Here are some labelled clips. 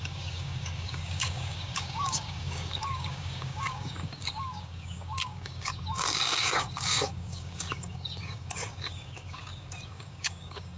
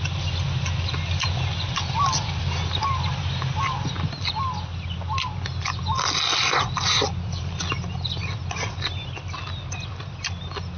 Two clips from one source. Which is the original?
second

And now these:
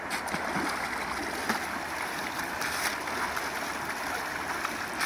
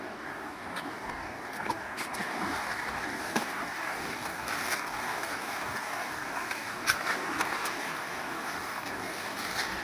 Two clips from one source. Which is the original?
first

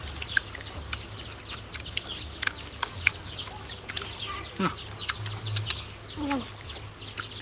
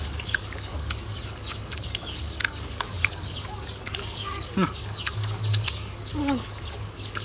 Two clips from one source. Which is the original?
first